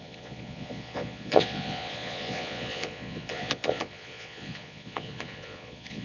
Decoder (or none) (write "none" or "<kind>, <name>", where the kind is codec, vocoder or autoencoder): vocoder, Vocos